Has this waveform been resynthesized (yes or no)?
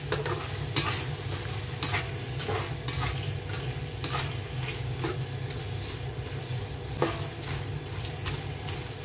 no